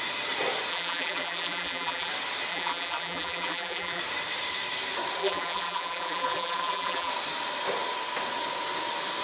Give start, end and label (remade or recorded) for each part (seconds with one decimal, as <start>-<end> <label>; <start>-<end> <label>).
0.0-0.7 recorded; 0.7-2.1 remade; 2.1-2.5 recorded; 2.5-4.0 remade; 4.0-5.2 recorded; 5.2-7.1 remade; 7.1-9.2 recorded